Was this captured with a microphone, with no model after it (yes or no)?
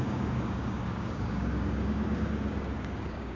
no